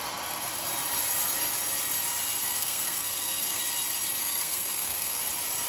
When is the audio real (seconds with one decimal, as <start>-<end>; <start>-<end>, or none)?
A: 0.0-2.4; 3.6-4.2; 5.2-5.7